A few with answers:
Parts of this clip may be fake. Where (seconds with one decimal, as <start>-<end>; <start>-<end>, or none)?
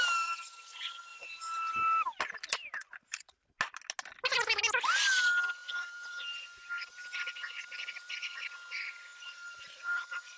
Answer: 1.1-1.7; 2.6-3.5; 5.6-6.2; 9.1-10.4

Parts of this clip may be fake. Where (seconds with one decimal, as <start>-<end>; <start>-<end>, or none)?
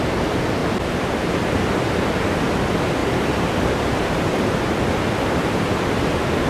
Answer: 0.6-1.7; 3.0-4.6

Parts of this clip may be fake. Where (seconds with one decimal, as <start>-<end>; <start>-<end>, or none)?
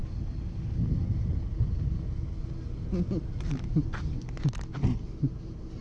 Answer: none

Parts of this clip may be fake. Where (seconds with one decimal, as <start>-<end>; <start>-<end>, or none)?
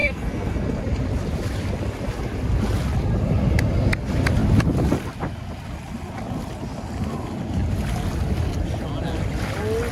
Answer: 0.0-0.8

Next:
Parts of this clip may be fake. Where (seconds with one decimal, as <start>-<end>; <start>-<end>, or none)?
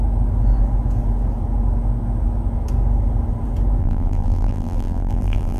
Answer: 3.8-5.6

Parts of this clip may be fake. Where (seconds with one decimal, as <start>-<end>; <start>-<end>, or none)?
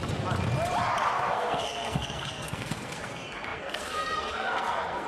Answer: 1.0-5.1